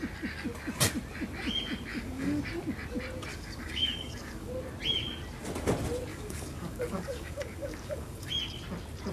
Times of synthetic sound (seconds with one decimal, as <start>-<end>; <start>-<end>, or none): 1.9-2.4; 3.3-4.5; 6.1-8.3